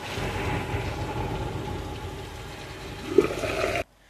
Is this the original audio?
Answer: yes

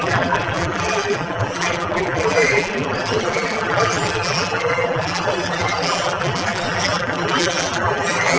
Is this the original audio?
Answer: no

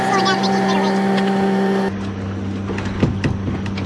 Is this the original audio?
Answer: yes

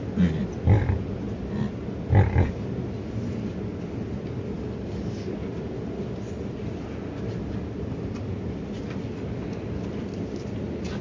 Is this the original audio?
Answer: yes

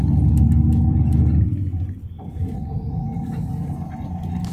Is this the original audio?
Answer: yes